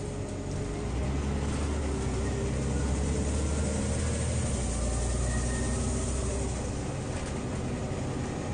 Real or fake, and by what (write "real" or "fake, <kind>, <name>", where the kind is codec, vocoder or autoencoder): real